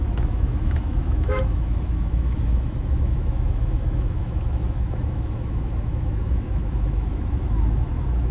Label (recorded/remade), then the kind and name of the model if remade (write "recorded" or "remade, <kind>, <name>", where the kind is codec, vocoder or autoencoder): remade, autoencoder, DAC-VAE